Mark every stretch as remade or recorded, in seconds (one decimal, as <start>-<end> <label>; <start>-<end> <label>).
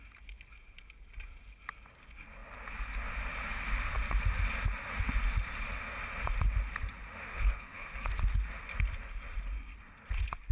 0.0-7.3 recorded; 7.3-8.1 remade; 8.1-10.5 recorded